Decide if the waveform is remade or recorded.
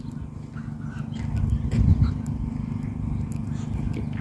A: recorded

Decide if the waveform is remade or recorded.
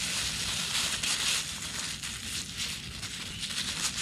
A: recorded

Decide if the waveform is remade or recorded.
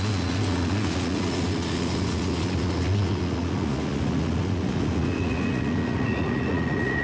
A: remade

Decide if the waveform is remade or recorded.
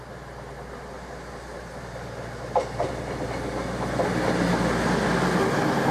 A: recorded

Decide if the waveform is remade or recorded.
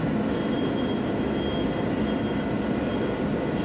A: recorded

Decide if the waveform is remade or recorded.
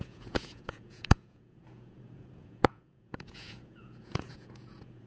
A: remade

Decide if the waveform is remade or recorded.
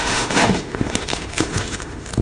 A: remade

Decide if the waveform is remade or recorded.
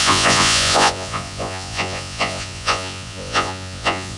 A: remade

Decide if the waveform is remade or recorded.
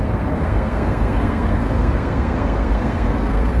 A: remade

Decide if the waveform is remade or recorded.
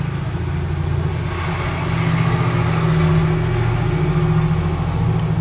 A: recorded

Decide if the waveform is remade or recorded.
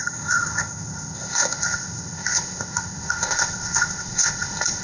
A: remade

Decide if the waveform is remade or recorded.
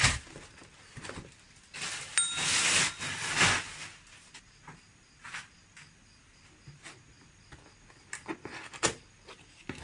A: recorded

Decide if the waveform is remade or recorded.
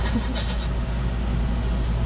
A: recorded